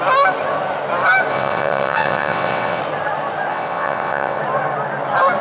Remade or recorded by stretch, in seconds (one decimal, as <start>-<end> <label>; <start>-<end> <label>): 0.0-1.3 recorded; 1.3-2.8 remade; 2.8-3.5 recorded; 3.5-4.4 remade; 4.4-5.4 recorded

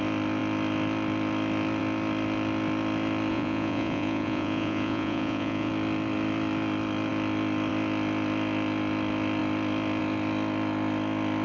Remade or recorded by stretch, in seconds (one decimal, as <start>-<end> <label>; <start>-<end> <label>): 0.0-3.3 recorded; 3.3-5.7 remade; 5.7-11.4 recorded

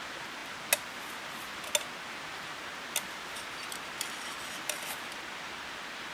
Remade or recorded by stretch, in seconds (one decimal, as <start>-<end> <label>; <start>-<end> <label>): 0.0-6.1 recorded

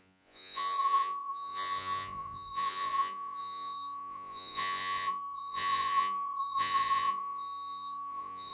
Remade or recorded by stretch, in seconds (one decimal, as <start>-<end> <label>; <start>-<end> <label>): 0.0-8.5 remade

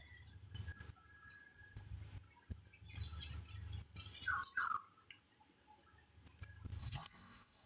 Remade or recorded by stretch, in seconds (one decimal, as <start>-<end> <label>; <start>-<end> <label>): 0.0-6.8 recorded; 6.8-7.7 remade

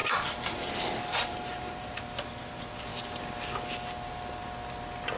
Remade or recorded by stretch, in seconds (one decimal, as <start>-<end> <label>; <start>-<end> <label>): 0.0-0.7 remade; 0.7-1.1 recorded; 1.1-2.0 remade; 2.0-5.2 recorded

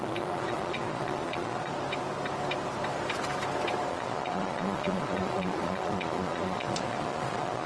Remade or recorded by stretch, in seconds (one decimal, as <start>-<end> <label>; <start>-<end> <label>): 0.0-1.7 remade; 1.7-3.9 recorded; 3.9-7.7 remade

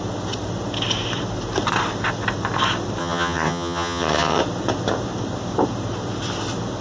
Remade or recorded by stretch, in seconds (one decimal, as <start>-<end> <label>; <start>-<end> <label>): 0.0-3.0 recorded; 3.0-4.4 remade; 4.4-6.8 recorded